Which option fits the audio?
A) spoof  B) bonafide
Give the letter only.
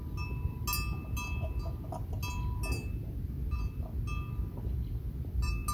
B